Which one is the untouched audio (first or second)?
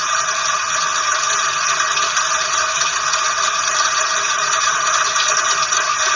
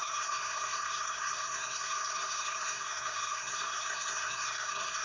first